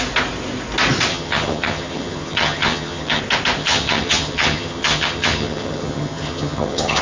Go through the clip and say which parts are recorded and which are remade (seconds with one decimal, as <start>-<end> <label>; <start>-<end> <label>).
0.0-1.1 recorded; 1.1-3.2 remade; 3.2-3.6 recorded; 3.6-7.0 remade